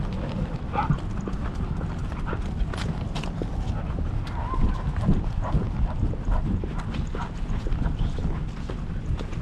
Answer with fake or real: real